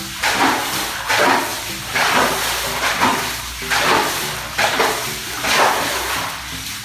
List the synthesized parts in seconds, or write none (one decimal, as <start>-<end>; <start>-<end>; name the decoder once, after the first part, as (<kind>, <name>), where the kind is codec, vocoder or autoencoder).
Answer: 0.6-1.1 (vocoder, BigVGAN v2)